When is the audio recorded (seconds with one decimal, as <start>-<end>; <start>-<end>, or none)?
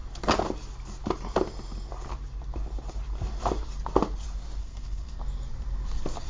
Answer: 0.0-4.6; 5.2-6.3